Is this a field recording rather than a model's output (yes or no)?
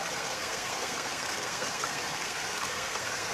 no